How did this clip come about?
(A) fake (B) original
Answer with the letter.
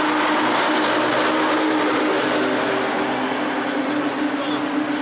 B